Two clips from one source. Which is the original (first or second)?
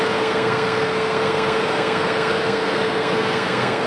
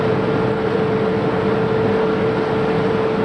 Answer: second